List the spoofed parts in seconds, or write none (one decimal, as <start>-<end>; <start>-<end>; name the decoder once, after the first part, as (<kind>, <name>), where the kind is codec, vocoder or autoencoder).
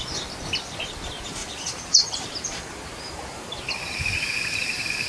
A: 1.4-3.6 (vocoder, BigVGAN v2)